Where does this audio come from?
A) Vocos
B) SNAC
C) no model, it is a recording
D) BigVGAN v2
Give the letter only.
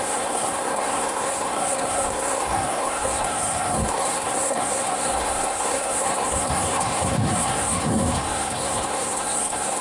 B